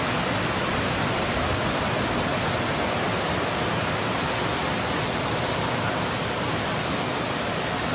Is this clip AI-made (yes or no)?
no